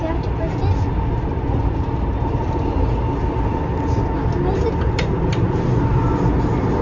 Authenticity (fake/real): real